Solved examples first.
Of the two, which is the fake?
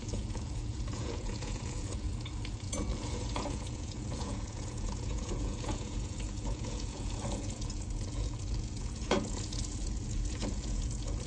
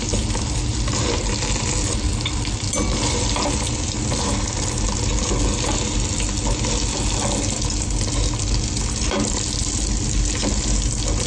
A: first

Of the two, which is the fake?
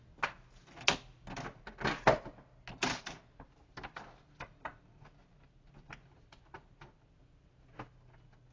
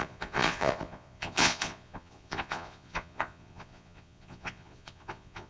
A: second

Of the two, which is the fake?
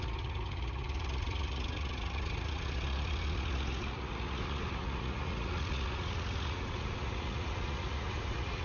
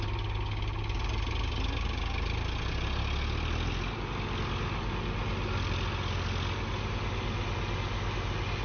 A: first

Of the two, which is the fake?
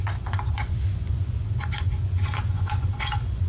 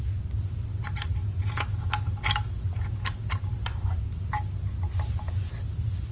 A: first